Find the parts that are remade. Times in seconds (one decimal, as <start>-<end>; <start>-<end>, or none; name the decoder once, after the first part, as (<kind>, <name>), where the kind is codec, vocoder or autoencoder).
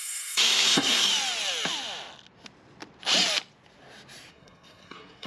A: 0.0-1.1 (codec, SNAC); 4.3-5.3